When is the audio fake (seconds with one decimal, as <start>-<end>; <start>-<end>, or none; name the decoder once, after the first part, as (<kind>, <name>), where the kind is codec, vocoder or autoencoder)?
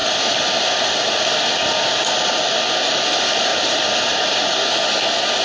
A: none